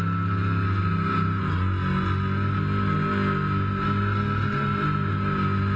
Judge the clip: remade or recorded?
recorded